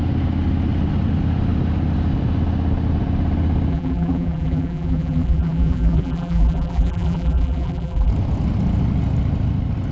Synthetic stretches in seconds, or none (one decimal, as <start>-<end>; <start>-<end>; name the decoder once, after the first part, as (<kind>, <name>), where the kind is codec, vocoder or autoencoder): 3.7-8.1 (vocoder, BigVGAN v2)

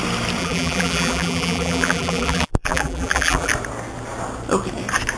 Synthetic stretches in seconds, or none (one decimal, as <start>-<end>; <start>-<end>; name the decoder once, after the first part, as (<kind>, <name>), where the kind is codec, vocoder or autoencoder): 0.4-3.5 (vocoder, BigVGAN v2)

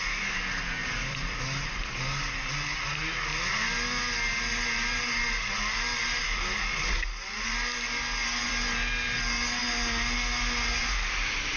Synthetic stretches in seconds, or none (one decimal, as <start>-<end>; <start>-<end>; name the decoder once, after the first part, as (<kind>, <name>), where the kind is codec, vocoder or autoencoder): 0.8-2.0 (vocoder, BigVGAN v2)

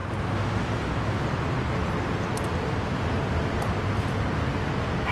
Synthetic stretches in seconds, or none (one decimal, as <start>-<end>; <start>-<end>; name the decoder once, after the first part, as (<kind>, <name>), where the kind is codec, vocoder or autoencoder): none

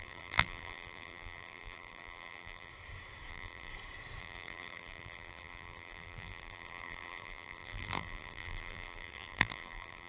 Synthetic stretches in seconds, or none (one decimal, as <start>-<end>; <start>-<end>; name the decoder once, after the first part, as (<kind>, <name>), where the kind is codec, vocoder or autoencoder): 0.0-2.7 (vocoder, BigVGAN v2); 3.3-3.7; 4.2-10.1